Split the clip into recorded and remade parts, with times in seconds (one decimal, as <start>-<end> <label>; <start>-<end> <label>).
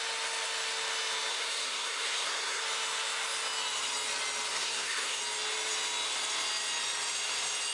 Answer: 0.0-1.3 recorded; 1.3-2.6 remade; 2.6-4.5 recorded; 4.5-5.2 remade; 5.2-7.7 recorded